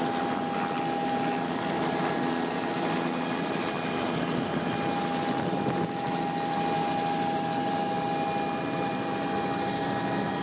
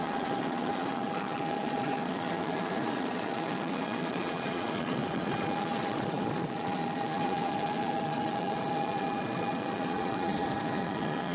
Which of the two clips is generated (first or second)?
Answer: second